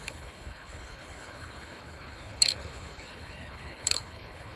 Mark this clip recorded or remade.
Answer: remade